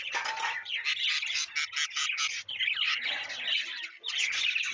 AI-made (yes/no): no